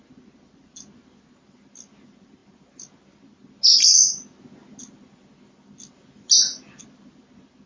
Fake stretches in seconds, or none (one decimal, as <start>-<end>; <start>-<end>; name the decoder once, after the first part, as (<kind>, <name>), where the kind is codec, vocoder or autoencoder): none